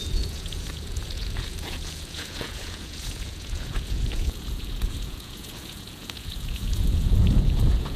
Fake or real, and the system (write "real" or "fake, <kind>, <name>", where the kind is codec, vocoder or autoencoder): fake, vocoder, Vocos